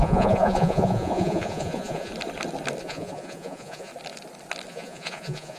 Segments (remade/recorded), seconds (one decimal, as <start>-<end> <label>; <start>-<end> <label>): 0.0-2.1 remade; 2.1-2.8 recorded; 2.8-3.9 remade; 3.9-4.7 recorded; 4.7-5.6 remade